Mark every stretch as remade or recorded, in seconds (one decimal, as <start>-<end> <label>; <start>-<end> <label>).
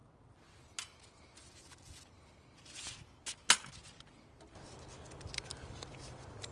0.0-6.5 recorded